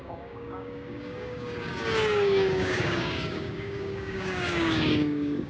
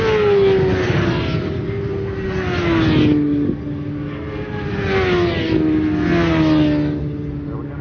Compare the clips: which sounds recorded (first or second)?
second